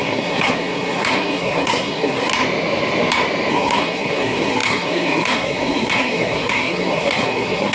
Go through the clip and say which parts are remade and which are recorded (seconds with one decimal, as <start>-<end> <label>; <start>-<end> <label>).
0.0-2.3 remade; 2.3-3.5 recorded; 3.5-7.7 remade